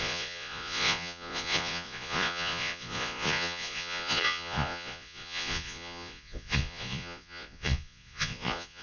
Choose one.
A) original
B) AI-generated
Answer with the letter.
B